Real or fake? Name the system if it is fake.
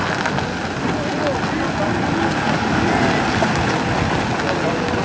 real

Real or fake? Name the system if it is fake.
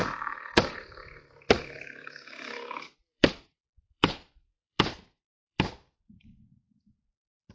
fake, vocoder, BigVGAN v2